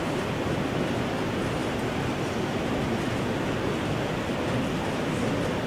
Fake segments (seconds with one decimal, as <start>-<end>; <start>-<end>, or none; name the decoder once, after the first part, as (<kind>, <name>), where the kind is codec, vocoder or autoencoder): none